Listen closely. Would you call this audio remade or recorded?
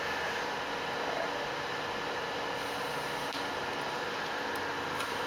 recorded